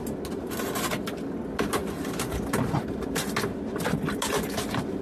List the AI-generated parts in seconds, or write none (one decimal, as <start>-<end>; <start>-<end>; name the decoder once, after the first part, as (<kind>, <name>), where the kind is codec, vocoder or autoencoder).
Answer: none